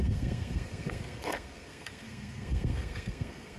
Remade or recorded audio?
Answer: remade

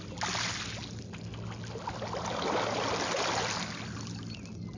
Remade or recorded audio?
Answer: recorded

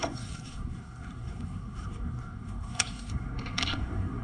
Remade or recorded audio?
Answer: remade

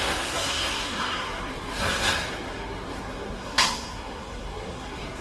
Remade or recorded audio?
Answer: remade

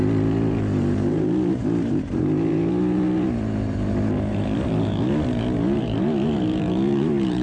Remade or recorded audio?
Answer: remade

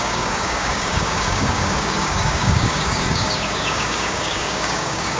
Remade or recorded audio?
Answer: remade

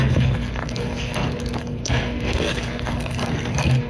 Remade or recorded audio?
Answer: remade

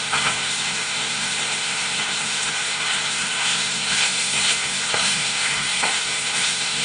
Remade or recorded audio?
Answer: remade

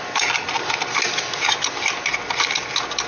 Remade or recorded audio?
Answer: recorded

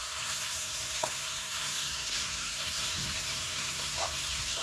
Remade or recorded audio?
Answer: remade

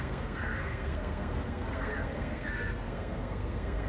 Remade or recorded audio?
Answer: remade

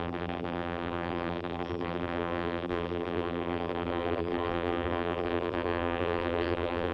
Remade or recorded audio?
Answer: remade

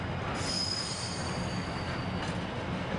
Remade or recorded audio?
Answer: recorded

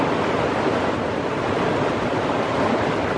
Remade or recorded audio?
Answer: recorded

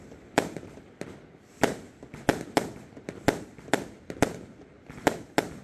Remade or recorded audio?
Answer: recorded